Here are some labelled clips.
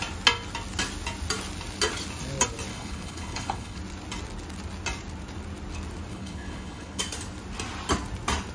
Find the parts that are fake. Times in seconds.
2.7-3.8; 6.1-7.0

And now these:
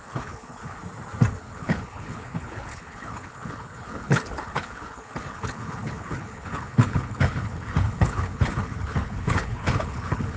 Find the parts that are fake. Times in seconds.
0.0-0.8; 1.4-10.4

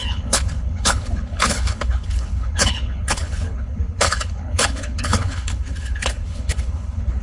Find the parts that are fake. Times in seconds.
0.0-7.2

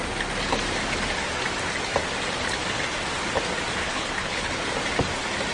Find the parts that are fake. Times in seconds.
3.8-4.7